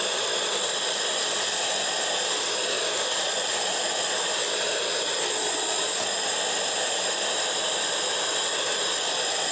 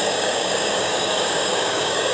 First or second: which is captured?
first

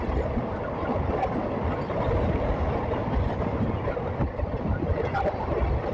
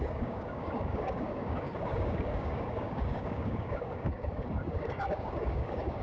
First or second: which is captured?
first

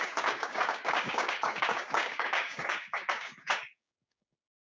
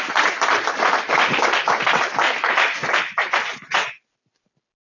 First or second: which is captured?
second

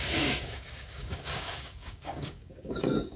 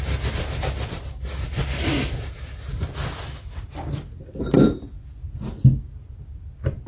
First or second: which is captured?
second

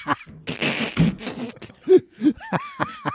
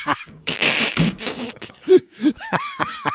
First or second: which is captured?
first